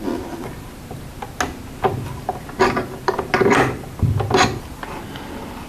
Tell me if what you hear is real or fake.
real